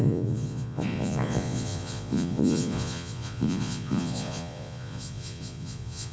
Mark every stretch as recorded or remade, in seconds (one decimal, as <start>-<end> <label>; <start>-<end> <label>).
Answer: 0.0-6.1 remade